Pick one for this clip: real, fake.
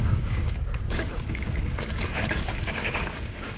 fake